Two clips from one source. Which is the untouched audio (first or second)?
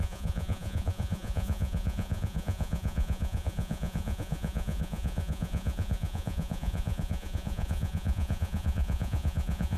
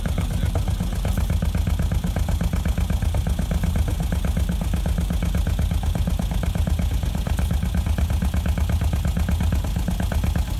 second